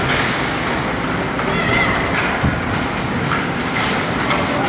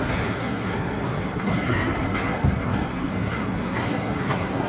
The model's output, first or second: second